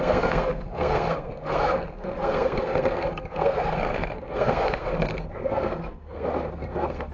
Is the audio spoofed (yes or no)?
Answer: yes